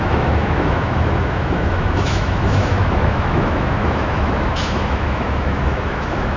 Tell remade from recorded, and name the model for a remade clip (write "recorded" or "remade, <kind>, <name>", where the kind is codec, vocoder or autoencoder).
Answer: remade, autoencoder, DAC-VAE